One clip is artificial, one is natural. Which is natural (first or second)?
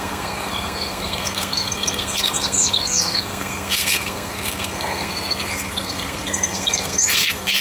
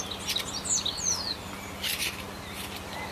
second